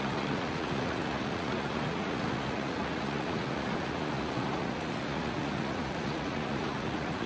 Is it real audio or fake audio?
fake